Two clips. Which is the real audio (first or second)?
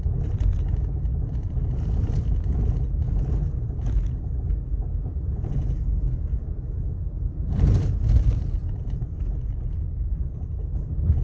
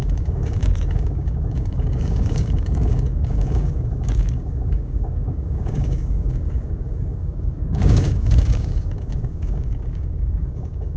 first